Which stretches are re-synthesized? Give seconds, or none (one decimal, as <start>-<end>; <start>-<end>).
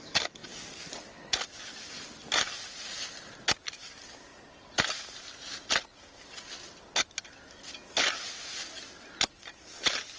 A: none